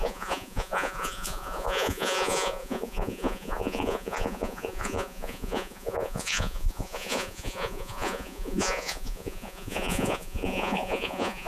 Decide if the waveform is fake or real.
fake